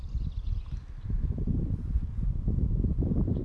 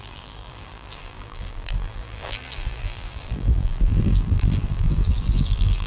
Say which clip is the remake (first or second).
second